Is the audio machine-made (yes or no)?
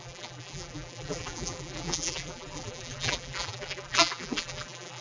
yes